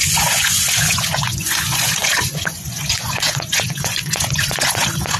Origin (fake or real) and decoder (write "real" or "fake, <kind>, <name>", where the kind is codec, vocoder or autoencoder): fake, vocoder, Vocos